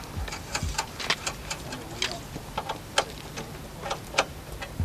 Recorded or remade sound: recorded